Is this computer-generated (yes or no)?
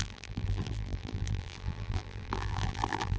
yes